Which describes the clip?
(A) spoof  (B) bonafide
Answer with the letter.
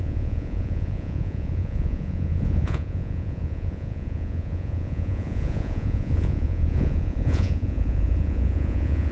A